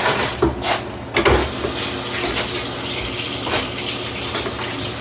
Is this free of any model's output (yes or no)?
yes